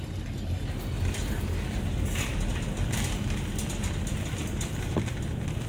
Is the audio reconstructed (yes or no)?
no